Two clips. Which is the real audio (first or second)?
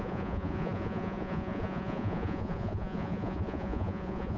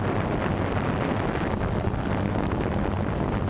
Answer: second